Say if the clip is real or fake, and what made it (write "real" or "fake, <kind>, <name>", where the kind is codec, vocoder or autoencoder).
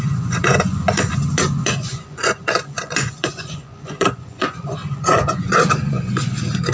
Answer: fake, vocoder, Vocos